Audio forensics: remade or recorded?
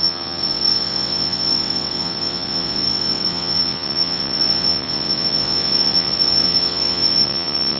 remade